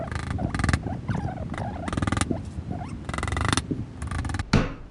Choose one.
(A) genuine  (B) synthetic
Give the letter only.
A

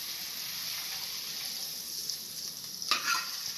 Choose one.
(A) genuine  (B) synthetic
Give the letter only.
A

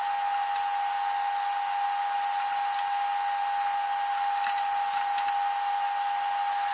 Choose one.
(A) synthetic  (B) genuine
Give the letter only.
B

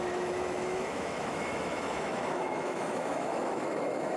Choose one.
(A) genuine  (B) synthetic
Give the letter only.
B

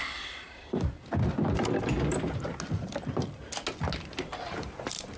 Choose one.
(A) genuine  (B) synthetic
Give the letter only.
A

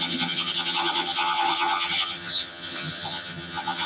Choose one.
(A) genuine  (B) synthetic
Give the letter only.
B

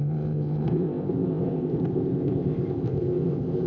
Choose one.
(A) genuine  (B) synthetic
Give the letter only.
B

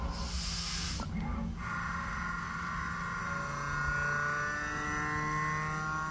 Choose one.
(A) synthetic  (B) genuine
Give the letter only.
B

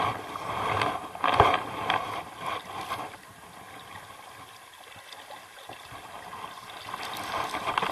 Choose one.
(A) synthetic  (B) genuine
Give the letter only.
B